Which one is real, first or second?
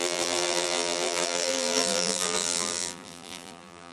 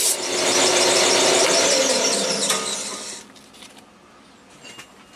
second